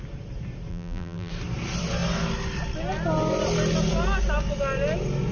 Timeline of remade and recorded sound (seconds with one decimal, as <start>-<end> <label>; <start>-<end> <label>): 0.0-0.7 recorded; 0.7-1.3 remade; 1.3-5.3 recorded